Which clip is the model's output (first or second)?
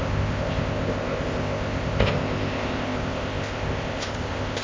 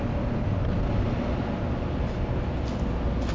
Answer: first